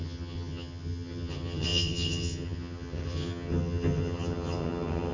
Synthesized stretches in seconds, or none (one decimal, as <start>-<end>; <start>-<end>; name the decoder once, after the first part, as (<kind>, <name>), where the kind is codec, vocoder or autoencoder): 0.0-5.1 (vocoder, HiFi-GAN)